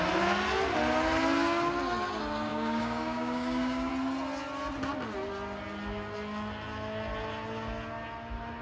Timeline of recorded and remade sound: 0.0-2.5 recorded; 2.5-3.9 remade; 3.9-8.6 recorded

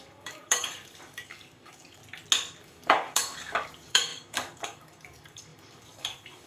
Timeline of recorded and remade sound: 0.0-2.0 remade; 2.0-2.6 recorded; 2.6-6.5 remade

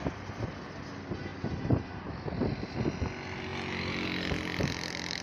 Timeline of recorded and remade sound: 0.0-5.2 recorded

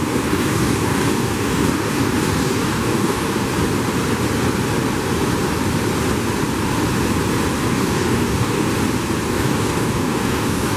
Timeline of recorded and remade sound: 0.0-3.5 remade; 3.5-7.7 recorded; 7.7-8.7 remade; 8.7-9.3 recorded; 9.3-10.8 remade